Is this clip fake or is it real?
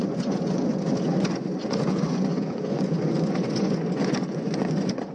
fake